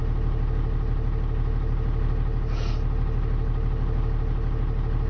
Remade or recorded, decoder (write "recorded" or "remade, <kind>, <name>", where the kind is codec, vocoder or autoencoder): recorded